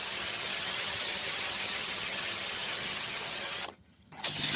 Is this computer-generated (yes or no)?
yes